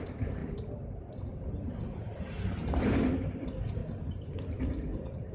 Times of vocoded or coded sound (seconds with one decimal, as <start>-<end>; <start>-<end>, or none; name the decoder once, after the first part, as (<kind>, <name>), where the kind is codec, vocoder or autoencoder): 0.0-0.4 (vocoder, BigVGAN v2); 2.8-3.8; 4.3-5.3